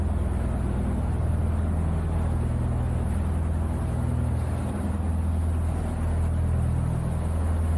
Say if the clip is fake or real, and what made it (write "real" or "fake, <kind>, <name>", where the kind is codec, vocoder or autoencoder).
real